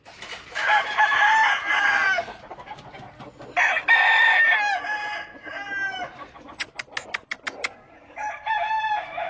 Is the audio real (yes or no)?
yes